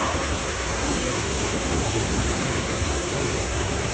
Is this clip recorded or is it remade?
remade